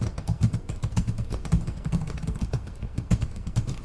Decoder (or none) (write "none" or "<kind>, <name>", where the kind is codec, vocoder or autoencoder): codec, SNAC